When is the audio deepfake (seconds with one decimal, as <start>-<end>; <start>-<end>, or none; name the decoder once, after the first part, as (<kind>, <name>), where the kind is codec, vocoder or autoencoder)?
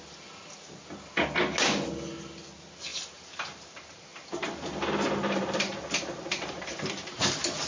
2.9-7.7 (vocoder, BigVGAN v2)